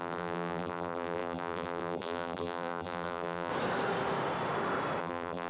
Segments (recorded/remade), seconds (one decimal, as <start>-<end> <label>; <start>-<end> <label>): 0.0-3.5 remade; 3.5-5.0 recorded; 5.0-5.5 remade